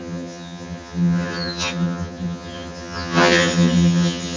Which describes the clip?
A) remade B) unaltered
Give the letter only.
A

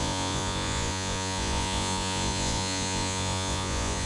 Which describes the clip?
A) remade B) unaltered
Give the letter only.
A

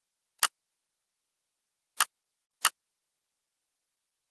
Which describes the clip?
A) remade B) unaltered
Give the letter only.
B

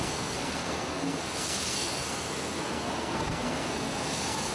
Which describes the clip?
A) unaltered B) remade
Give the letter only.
B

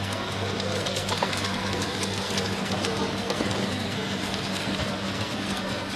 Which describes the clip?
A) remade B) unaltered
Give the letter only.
A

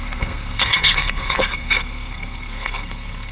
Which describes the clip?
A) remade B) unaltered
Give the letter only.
A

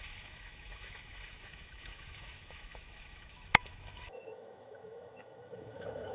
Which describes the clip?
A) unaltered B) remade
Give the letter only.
B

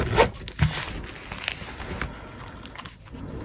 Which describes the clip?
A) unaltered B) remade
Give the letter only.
A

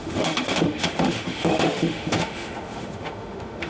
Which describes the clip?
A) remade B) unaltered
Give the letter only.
A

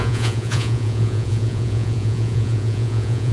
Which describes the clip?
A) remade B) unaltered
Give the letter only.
A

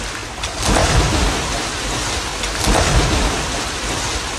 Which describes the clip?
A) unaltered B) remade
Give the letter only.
A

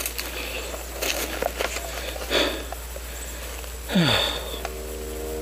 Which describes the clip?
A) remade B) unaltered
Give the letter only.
B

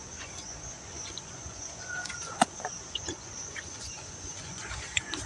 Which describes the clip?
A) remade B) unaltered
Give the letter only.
A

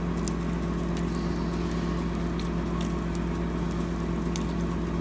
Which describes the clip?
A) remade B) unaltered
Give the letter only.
B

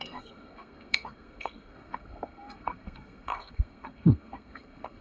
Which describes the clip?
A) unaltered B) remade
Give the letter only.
B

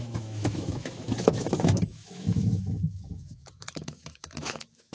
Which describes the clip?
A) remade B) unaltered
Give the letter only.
A